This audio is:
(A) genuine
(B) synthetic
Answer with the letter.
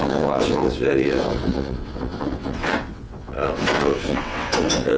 B